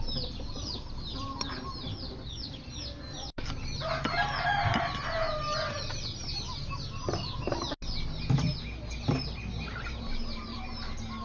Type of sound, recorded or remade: recorded